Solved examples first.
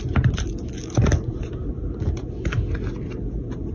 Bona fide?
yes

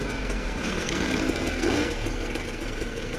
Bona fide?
no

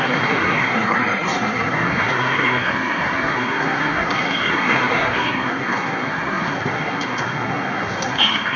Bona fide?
no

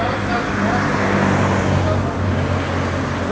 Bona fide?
yes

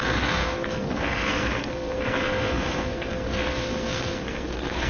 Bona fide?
no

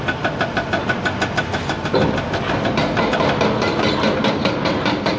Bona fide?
yes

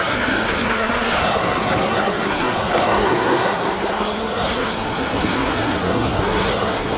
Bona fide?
no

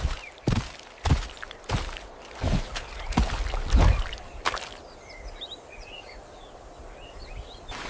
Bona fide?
yes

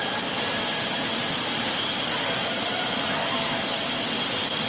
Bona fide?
yes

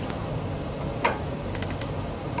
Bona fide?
yes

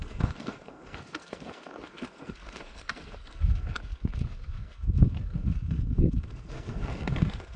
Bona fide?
no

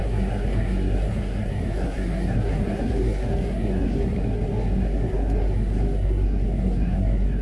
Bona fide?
no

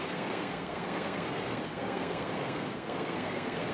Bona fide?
no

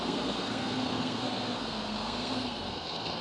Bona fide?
no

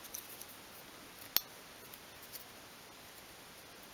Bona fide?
yes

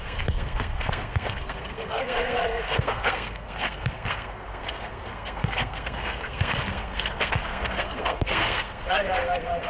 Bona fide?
no